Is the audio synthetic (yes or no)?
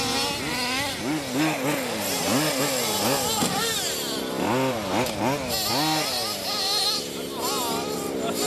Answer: no